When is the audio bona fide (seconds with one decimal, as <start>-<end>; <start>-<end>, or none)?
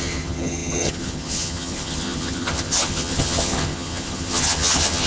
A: none